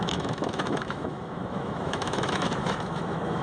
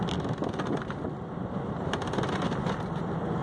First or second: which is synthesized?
first